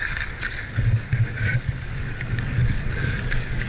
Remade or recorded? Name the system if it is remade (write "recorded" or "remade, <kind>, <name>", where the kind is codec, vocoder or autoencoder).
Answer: remade, codec, DAC